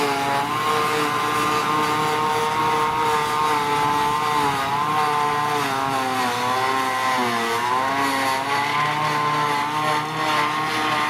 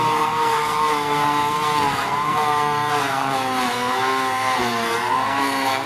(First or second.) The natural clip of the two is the first